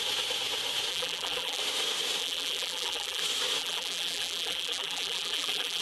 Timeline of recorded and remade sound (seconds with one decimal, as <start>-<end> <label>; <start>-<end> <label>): 0.0-0.9 recorded; 0.9-1.6 remade; 1.6-2.2 recorded; 2.2-3.2 remade; 3.2-3.6 recorded; 3.6-5.8 remade